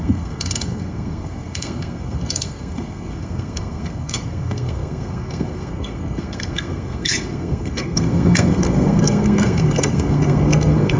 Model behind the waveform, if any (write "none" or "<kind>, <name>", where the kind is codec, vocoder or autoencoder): codec, SNAC